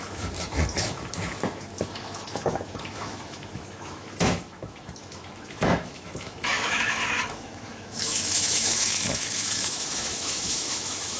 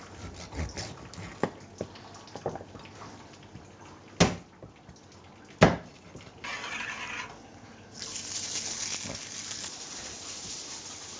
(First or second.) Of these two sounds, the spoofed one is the first